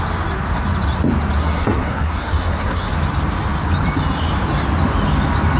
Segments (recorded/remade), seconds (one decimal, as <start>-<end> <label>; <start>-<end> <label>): 0.0-1.4 recorded; 1.4-2.9 remade; 2.9-5.6 recorded